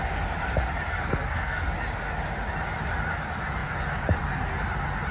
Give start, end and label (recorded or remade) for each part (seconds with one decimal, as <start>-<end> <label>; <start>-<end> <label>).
0.0-0.9 recorded; 0.9-1.6 remade; 1.6-5.1 recorded